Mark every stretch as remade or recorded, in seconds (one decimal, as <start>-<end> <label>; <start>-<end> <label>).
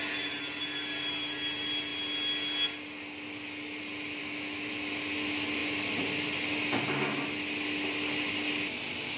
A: 0.0-4.2 recorded; 4.2-4.7 remade; 4.7-9.2 recorded